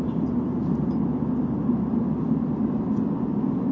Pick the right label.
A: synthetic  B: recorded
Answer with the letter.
B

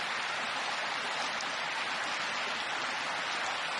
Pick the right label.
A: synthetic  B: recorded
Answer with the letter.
B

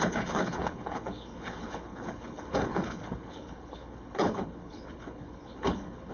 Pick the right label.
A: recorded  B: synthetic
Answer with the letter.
B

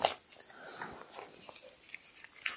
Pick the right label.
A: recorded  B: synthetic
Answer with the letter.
A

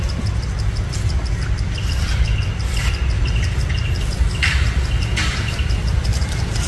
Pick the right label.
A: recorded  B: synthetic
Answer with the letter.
A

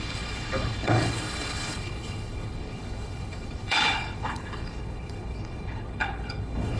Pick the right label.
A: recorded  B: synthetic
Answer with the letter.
B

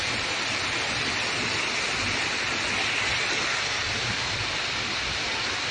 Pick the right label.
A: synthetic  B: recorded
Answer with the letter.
B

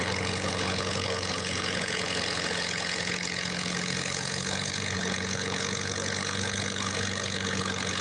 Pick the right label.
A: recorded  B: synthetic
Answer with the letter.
B